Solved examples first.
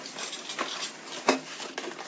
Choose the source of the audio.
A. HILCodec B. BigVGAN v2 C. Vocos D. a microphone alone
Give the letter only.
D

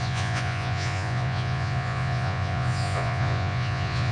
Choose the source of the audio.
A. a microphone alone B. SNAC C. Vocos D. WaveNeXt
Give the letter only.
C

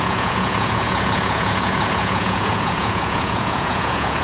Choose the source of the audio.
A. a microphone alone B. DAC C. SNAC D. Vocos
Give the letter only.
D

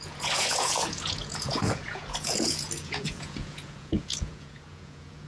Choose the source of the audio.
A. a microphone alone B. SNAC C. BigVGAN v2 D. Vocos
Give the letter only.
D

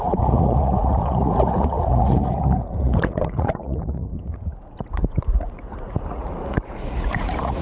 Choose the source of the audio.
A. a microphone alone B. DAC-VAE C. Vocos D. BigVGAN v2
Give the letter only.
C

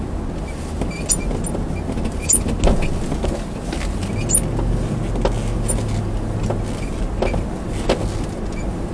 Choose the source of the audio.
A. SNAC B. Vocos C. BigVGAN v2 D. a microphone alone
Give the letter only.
D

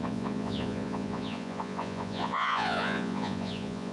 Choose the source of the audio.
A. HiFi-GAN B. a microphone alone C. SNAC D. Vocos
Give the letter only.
D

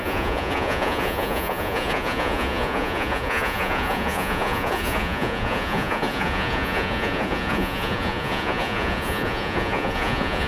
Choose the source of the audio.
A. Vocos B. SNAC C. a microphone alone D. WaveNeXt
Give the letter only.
A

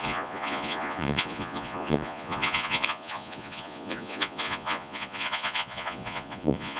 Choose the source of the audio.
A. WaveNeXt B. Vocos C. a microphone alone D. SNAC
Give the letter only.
B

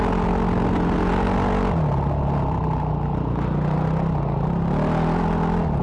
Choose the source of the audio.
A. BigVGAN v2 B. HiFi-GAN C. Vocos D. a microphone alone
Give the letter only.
D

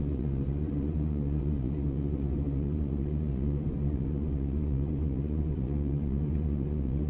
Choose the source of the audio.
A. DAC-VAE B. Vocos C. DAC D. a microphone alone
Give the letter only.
B